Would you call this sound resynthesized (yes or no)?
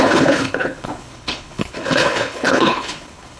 yes